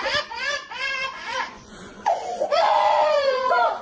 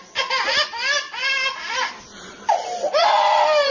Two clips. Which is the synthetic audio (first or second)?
first